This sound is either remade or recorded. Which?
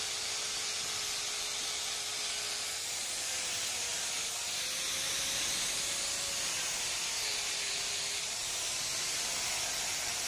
recorded